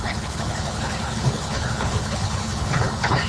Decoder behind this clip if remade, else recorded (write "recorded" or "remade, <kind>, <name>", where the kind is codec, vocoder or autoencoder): remade, codec, HILCodec